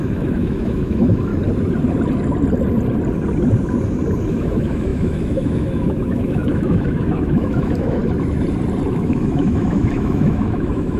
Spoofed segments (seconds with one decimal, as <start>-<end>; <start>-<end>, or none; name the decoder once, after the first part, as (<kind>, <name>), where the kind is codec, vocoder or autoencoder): 0.0-1.3 (autoencoder, DAC-VAE); 4.3-8.0; 8.9-11.0